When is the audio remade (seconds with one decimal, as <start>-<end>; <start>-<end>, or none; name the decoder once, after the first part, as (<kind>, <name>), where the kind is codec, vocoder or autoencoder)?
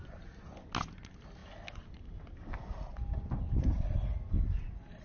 none